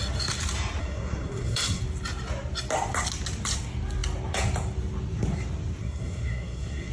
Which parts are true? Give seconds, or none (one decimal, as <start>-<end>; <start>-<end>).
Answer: 0.0-0.8; 1.8-5.8